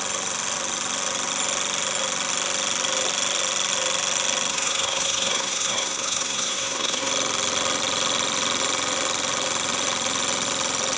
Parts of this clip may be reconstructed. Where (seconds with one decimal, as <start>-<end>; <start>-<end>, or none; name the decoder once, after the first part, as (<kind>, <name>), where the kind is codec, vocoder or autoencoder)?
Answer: 4.5-7.1 (codec, SNAC)